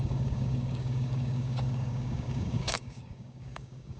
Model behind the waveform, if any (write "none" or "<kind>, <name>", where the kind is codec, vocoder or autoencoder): codec, DAC